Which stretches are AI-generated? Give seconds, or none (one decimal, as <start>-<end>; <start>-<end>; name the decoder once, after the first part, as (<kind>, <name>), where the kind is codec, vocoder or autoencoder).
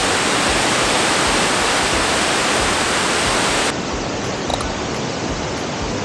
none